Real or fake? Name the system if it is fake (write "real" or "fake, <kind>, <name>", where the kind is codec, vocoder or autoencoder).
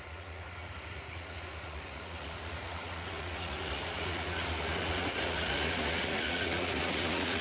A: fake, vocoder, Vocos